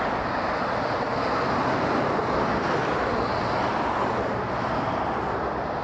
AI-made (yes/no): no